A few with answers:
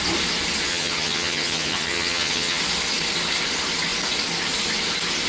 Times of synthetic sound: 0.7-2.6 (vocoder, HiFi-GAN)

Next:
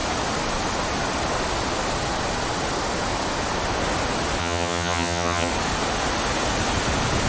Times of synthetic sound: 4.4-5.5 (vocoder, HiFi-GAN)

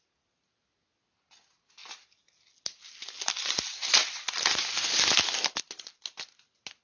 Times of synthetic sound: none